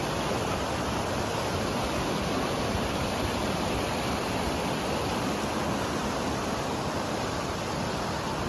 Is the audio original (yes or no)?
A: yes